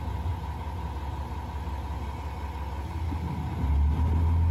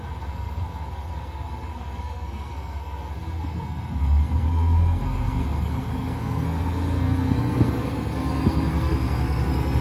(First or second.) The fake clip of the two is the second